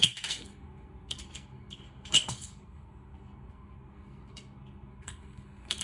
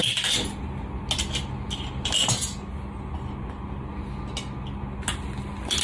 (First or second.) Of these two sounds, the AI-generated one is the first